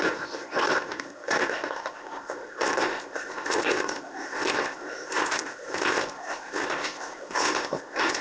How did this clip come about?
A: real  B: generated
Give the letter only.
B